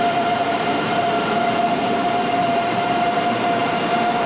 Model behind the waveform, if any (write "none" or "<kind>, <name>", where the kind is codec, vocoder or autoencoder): none